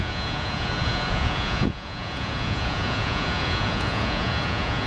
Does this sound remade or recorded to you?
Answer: remade